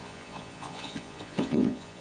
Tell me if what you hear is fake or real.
fake